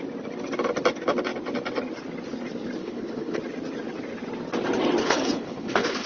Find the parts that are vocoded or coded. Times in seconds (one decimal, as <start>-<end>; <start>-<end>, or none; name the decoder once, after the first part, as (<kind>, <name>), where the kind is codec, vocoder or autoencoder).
2.8-3.4 (codec, HILCodec); 5.0-6.1